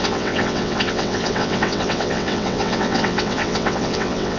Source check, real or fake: fake